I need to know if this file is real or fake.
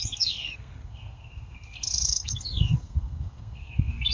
fake